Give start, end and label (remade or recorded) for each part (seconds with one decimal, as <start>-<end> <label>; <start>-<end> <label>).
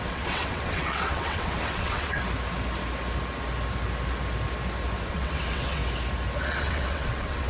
0.0-2.2 remade; 2.2-5.1 recorded; 5.1-5.8 remade; 5.8-6.4 recorded; 6.4-7.5 remade